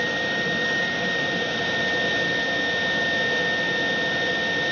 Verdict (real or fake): real